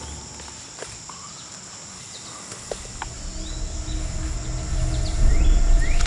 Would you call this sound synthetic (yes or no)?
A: no